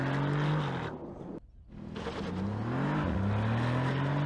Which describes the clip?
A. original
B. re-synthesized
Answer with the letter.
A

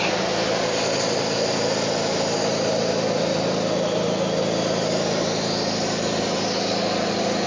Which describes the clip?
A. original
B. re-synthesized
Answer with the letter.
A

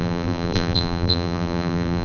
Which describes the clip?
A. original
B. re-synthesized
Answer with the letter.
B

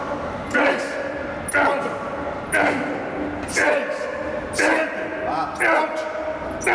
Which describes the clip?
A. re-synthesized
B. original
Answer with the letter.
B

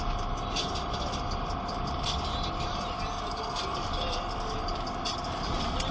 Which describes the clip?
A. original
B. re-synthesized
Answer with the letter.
A